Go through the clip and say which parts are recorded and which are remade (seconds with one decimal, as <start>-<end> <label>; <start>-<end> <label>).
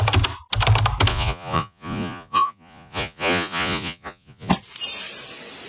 0.0-1.1 recorded; 1.1-4.5 remade; 4.5-5.7 recorded